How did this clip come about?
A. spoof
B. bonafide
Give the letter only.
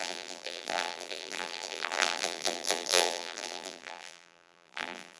A